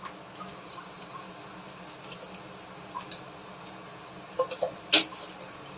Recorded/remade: recorded